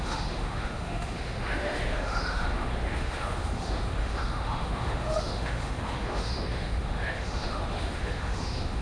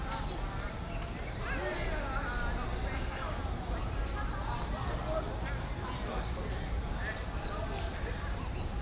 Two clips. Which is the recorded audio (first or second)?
second